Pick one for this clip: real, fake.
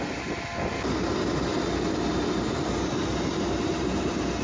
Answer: real